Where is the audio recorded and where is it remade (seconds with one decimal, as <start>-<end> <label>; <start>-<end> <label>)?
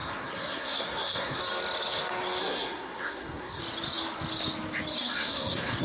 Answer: 0.0-1.4 remade; 1.4-2.4 recorded; 2.4-3.6 remade; 3.6-5.0 recorded; 5.0-5.8 remade